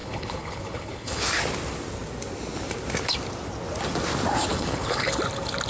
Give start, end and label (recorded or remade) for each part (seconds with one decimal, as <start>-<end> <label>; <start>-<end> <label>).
0.0-1.2 remade; 1.2-4.5 recorded; 4.5-5.2 remade; 5.2-5.7 recorded